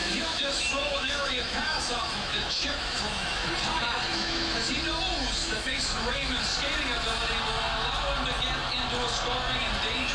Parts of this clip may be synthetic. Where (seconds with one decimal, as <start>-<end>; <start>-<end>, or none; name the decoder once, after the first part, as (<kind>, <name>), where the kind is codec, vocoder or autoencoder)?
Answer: 0.0-3.5 (autoencoder, DAC-VAE); 4.1-4.7; 5.4-6.4